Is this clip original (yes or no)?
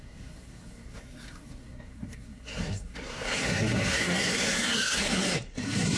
no